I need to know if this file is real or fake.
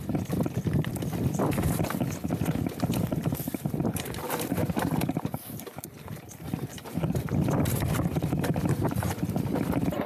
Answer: real